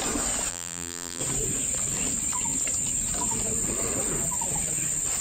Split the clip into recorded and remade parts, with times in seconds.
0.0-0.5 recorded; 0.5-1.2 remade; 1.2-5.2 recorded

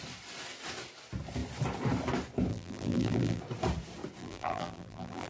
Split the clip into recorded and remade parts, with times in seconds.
0.0-2.5 recorded; 2.5-3.4 remade; 3.4-4.2 recorded; 4.2-5.3 remade